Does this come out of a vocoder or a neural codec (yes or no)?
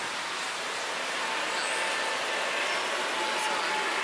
no